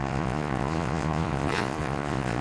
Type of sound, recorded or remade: remade